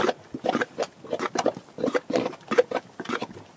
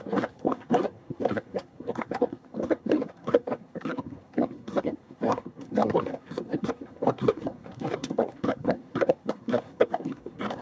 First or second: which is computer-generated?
second